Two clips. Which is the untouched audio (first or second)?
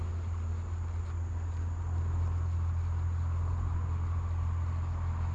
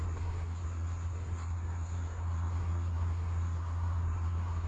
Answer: first